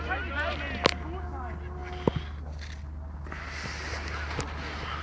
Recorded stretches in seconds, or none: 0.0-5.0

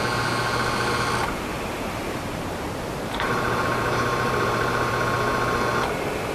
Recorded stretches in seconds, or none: 0.0-1.5; 4.9-6.3

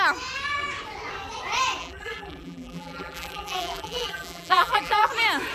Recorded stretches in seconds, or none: 0.0-1.8; 5.1-5.5

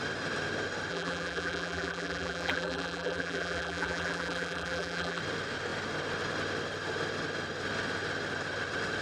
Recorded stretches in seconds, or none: 0.0-0.9; 5.2-9.0